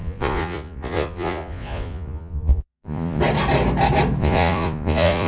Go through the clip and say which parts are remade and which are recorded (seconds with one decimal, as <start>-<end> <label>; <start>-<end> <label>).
0.0-3.2 remade; 3.2-4.2 recorded; 4.2-5.3 remade